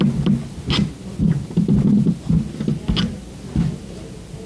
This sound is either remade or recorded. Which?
recorded